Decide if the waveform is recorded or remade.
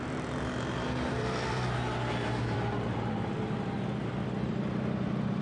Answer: remade